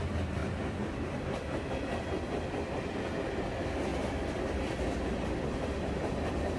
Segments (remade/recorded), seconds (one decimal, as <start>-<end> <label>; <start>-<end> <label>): 0.0-6.6 recorded